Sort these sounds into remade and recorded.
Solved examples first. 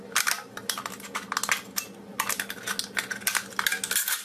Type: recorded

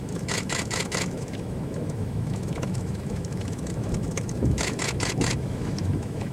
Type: remade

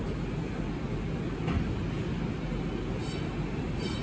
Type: recorded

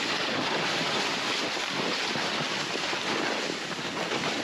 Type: recorded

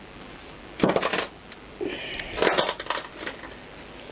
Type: recorded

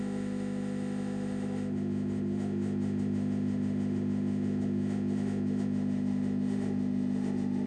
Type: remade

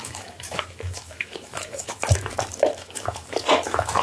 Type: remade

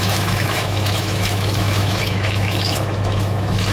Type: remade